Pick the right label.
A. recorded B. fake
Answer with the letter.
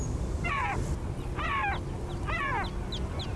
A